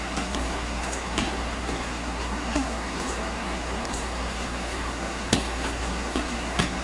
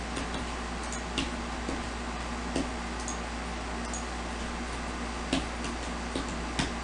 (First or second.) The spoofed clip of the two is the first